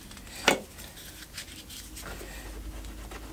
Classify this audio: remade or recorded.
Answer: recorded